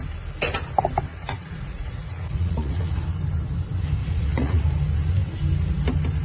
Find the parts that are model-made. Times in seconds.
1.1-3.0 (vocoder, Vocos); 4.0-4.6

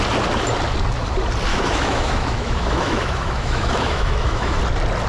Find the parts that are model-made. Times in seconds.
1.5-4.6 (autoencoder, DAC-VAE)

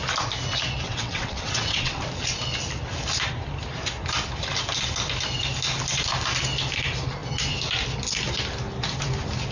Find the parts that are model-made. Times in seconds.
0.9-2.0 (vocoder, WaveNeXt)

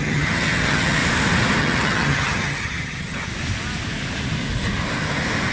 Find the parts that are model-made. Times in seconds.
0.0-1.0 (vocoder, HiFi-GAN); 1.6-3.3

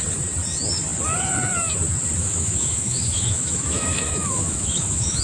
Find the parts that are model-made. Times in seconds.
2.2-5.2 (autoencoder, DAC-VAE)

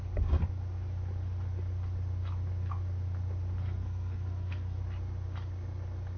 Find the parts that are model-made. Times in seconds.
3.6-4.8 (codec, SNAC)

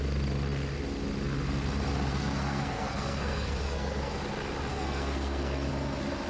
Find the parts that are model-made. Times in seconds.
2.1-4.2 (codec, SNAC); 4.7-5.7